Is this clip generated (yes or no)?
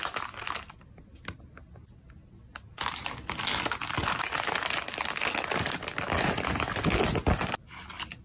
no